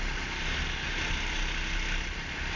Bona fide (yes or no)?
yes